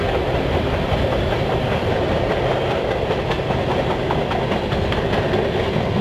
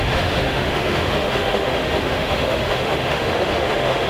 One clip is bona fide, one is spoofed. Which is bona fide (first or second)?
first